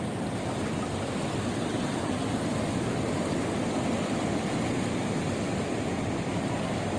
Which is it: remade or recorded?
recorded